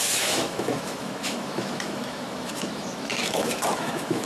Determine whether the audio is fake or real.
fake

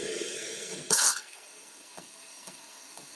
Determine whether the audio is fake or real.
fake